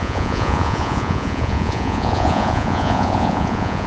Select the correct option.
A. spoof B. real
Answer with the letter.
A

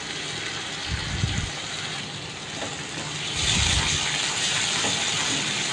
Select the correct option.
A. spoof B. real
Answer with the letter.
B